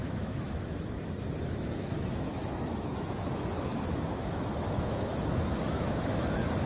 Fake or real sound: fake